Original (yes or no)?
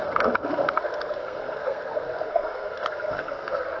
no